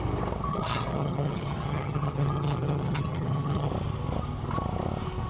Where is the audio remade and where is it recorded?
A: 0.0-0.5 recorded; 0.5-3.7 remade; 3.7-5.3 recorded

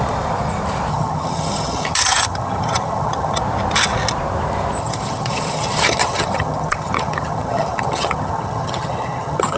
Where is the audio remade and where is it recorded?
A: 0.0-0.9 recorded; 0.9-3.4 remade; 3.4-4.8 recorded; 4.8-9.6 remade